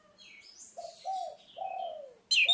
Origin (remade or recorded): recorded